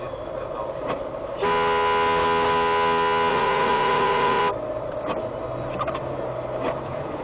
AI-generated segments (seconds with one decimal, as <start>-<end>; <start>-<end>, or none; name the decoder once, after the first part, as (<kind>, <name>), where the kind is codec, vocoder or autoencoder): 3.3-4.4 (vocoder, Vocos)